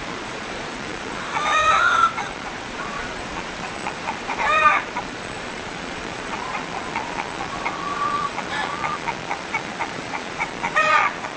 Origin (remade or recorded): remade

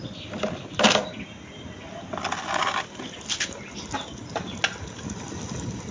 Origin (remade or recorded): recorded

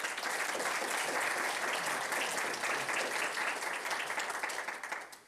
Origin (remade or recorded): recorded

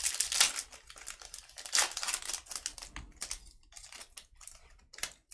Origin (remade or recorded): recorded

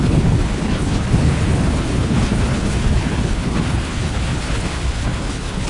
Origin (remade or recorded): remade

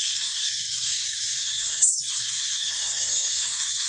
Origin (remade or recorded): remade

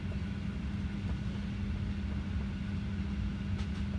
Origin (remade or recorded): recorded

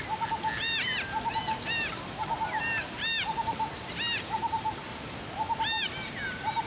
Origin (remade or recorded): recorded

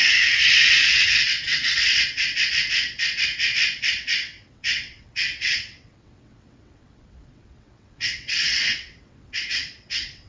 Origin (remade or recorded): remade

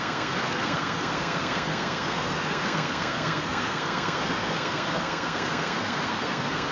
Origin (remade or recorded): remade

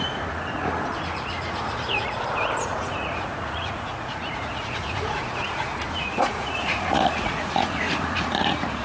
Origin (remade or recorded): remade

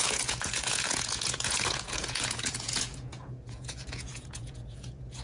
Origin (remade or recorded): remade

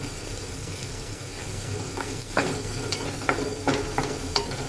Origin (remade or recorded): remade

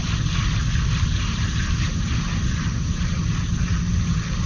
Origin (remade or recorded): recorded